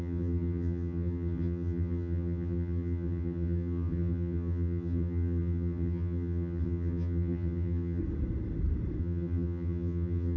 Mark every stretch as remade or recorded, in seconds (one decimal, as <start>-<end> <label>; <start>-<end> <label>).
0.0-8.0 remade; 8.0-9.0 recorded; 9.0-10.4 remade